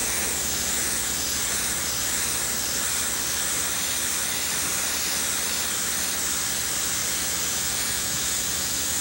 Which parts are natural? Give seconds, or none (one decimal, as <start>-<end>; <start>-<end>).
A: 1.9-7.0